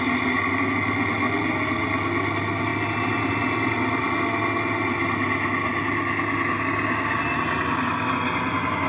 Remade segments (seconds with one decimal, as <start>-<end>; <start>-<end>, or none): none